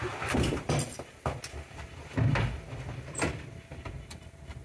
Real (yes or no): yes